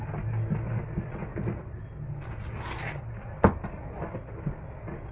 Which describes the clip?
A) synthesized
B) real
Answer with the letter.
B